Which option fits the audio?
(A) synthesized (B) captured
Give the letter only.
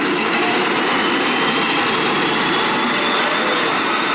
B